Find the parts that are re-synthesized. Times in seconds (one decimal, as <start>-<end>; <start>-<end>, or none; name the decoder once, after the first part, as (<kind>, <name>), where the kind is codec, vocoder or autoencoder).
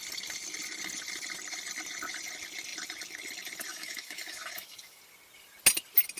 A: 3.7-5.0 (autoencoder, DAC-VAE)